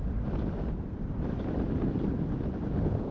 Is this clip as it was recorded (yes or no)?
no